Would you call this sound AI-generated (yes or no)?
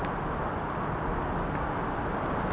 no